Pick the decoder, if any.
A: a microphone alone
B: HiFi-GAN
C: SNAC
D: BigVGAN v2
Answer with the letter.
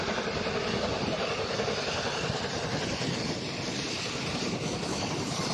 A